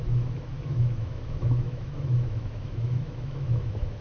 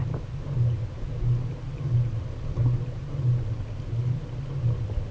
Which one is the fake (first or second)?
first